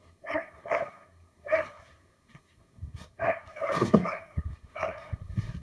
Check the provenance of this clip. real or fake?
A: fake